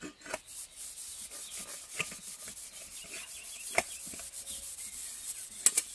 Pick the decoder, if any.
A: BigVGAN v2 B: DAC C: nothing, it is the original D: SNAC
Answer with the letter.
C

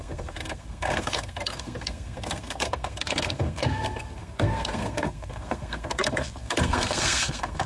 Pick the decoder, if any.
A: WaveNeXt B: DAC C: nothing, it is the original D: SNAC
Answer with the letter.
D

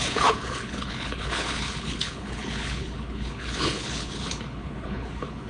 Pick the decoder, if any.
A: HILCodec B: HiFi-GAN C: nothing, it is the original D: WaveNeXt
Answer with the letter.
A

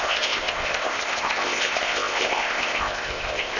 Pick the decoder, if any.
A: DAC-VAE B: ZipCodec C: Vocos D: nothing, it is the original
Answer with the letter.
B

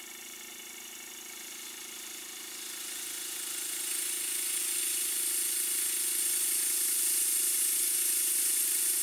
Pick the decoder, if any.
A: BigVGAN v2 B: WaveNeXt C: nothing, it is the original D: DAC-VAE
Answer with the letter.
C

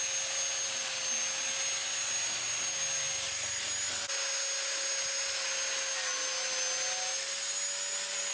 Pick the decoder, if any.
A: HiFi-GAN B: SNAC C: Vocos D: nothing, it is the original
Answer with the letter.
D